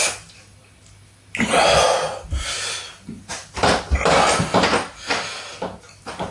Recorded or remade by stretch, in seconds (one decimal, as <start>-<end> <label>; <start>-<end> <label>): 0.0-6.3 recorded